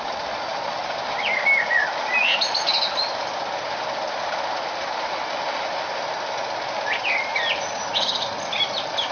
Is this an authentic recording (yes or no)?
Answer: yes